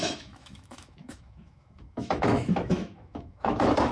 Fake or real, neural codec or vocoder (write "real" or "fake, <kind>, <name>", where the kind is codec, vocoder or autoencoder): fake, autoencoder, DAC-VAE